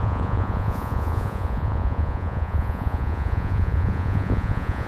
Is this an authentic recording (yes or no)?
no